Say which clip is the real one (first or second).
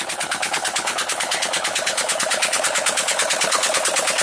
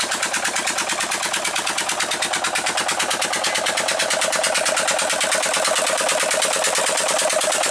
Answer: second